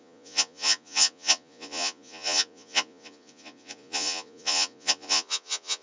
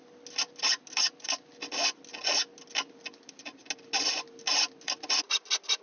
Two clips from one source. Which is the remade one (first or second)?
first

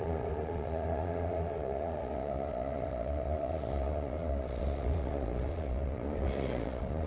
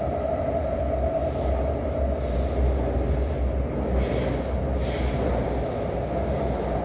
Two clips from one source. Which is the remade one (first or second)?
first